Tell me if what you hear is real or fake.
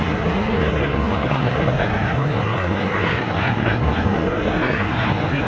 fake